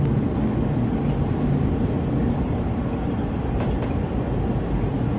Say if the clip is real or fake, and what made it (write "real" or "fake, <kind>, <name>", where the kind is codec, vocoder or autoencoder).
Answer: real